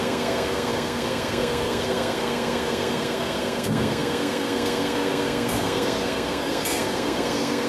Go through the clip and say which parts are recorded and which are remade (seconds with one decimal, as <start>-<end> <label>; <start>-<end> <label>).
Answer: 0.0-7.7 remade